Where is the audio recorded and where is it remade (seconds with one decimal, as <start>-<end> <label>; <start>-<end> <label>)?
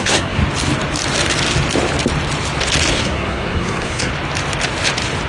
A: 0.0-0.4 remade; 0.4-2.9 recorded; 2.9-4.1 remade; 4.1-5.3 recorded